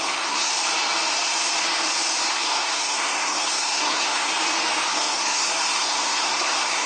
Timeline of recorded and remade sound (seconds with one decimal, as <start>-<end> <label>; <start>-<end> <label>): 0.0-0.5 remade; 0.5-2.3 recorded; 2.3-4.3 remade; 4.3-4.9 recorded; 4.9-6.9 remade